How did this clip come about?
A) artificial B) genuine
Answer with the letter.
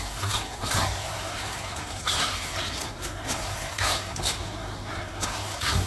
A